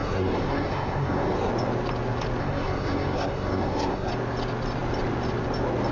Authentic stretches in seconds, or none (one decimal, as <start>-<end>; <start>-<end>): 1.5-2.4; 4.1-5.9